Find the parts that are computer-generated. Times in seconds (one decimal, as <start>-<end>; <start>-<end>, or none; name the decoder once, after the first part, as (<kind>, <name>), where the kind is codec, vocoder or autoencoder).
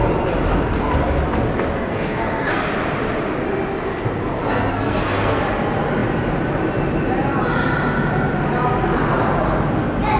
1.7-2.6 (codec, SNAC); 4.4-5.4